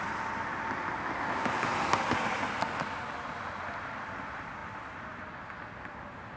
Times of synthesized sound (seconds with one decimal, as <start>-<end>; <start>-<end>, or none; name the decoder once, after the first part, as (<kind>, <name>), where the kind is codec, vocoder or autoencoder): none